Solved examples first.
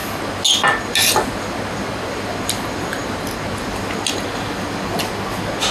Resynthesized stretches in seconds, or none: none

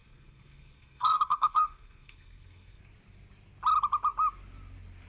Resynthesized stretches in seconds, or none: 0.0-2.8 (codec, SNAC)

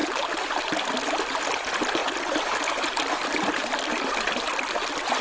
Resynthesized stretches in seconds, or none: none

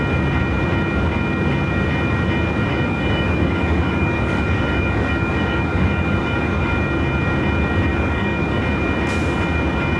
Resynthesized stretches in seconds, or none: 2.7-6.7 (codec, DAC); 7.9-8.6

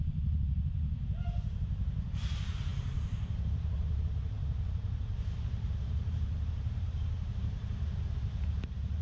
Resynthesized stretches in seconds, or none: 0.0-9.0 (vocoder, BigVGAN v2)

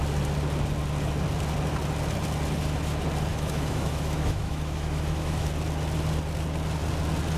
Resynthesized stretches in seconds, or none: 3.3-5.5 (autoencoder, DAC-VAE)

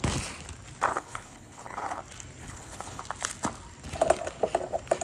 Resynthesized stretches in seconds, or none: 0.9-2.0 (codec, HILCodec); 2.4-3.0

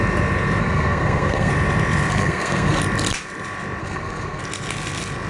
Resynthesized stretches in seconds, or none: 0.6-1.5 (codec, SNAC); 2.1-2.8; 3.8-4.4